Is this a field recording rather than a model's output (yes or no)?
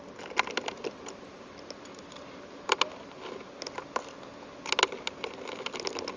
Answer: yes